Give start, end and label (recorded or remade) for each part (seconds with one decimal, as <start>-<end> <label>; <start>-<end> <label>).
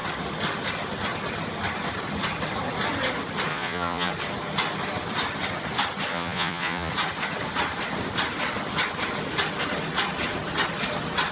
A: 0.0-3.5 recorded; 3.5-4.1 remade; 4.1-6.1 recorded; 6.1-6.9 remade; 6.9-11.3 recorded